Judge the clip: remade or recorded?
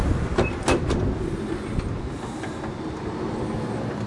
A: recorded